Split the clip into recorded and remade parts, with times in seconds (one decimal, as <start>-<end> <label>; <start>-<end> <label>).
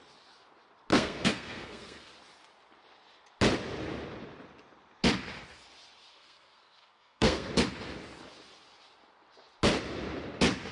0.0-0.9 recorded; 0.9-2.1 remade; 2.1-6.1 recorded; 6.1-7.5 remade; 7.5-10.7 recorded